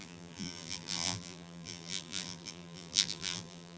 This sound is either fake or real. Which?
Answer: fake